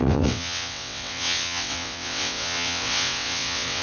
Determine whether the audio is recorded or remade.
remade